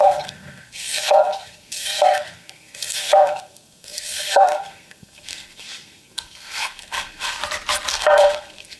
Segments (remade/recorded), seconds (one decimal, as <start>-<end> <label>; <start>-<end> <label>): 0.0-7.4 remade; 7.4-7.9 recorded; 7.9-8.8 remade